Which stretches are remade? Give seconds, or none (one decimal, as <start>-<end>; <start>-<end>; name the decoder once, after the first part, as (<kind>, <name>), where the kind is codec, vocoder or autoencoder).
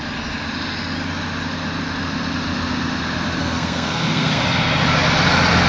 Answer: 3.4-4.4 (codec, SNAC)